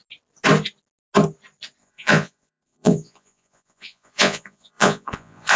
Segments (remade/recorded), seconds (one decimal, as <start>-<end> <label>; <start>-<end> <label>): 0.0-1.8 recorded; 1.8-5.6 remade